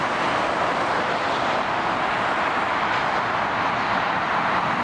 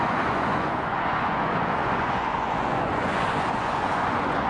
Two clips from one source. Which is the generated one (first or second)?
second